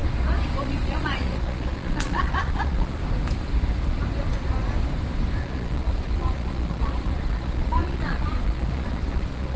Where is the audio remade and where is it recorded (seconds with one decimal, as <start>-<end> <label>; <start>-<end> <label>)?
0.0-0.6 recorded; 0.6-3.0 remade; 3.0-5.4 recorded; 5.4-9.6 remade